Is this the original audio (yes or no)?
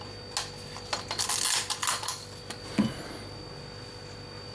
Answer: yes